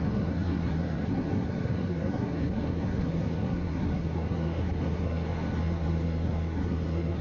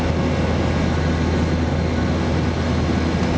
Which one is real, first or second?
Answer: second